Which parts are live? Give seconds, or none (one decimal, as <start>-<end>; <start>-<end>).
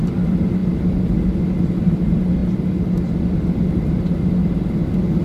0.0-5.2